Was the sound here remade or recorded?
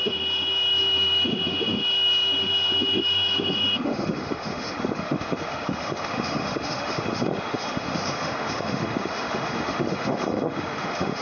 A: remade